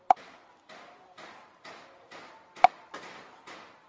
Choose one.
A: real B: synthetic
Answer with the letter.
A